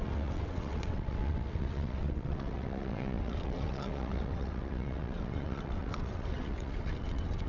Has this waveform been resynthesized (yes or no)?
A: yes